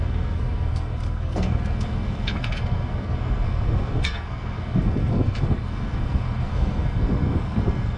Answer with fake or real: fake